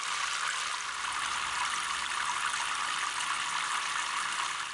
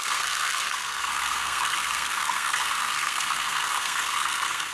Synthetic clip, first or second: second